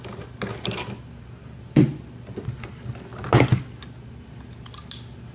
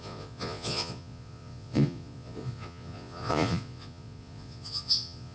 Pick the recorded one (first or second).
first